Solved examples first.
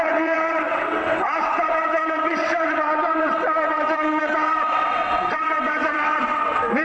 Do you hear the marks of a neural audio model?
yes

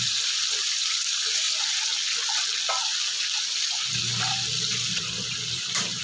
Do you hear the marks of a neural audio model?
no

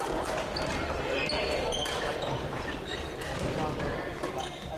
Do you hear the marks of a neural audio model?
no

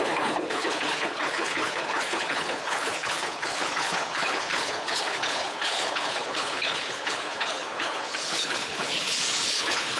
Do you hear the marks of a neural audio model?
yes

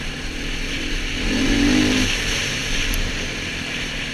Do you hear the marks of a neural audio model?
yes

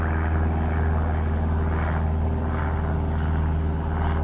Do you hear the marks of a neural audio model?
no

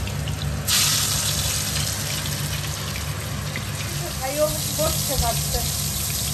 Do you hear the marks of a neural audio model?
no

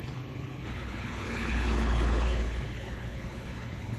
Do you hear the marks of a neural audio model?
yes